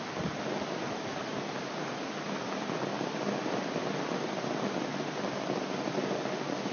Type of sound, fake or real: real